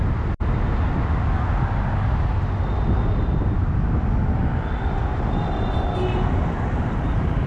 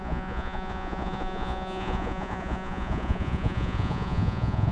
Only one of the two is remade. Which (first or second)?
second